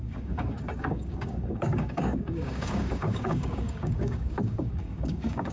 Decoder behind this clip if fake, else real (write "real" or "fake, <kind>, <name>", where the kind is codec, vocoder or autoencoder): fake, codec, DAC